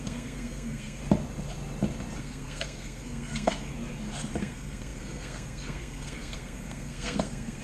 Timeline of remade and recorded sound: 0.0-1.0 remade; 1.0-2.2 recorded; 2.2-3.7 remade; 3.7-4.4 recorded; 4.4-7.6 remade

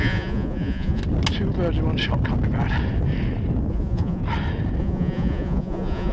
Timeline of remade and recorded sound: 0.0-1.0 remade; 1.0-3.7 recorded; 3.7-4.2 remade; 4.2-4.8 recorded; 4.8-6.1 remade

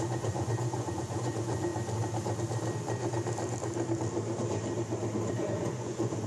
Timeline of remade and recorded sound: 0.0-1.7 remade; 1.7-5.3 recorded; 5.3-6.3 remade

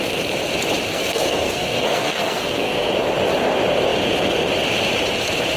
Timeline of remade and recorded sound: 0.0-0.9 recorded; 0.9-2.9 remade; 2.9-5.6 recorded

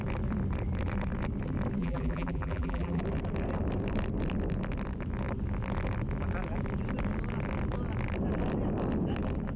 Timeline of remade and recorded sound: 0.0-1.8 recorded; 1.8-3.0 remade; 3.0-9.6 recorded

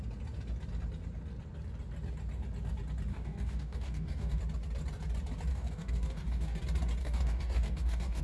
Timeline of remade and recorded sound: 0.0-3.1 recorded; 3.1-4.4 remade; 4.4-5.5 recorded; 5.5-6.6 remade; 6.6-7.0 recorded; 7.0-8.2 remade

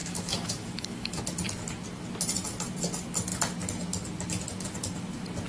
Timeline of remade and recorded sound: 0.0-1.2 remade; 1.2-5.5 recorded